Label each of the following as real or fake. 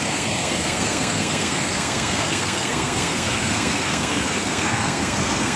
fake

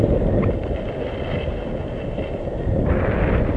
real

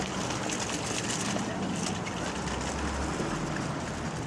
real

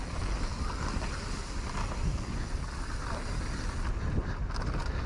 real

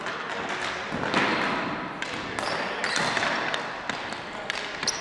real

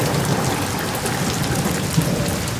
real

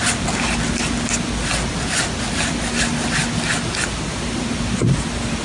real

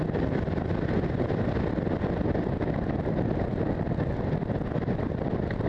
real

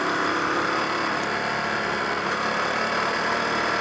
real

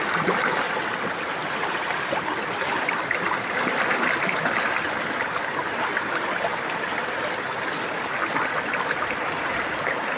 real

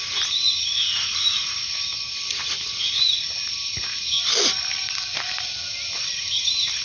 real